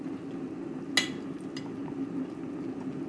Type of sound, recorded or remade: recorded